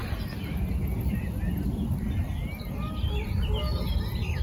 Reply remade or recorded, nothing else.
recorded